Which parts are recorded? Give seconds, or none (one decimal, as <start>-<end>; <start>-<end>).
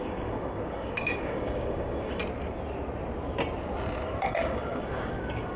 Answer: 2.2-4.2